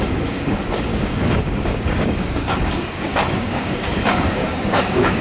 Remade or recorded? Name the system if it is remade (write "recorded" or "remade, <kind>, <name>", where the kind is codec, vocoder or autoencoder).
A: remade, codec, DAC